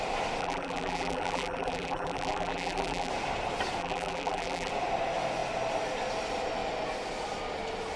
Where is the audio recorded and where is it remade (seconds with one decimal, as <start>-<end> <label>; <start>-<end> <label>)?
0.0-0.4 recorded; 0.4-3.1 remade; 3.1-3.8 recorded; 3.8-4.7 remade; 4.7-8.0 recorded